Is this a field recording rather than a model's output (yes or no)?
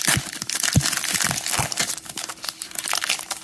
yes